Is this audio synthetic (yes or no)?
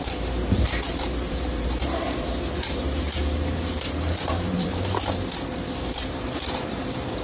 yes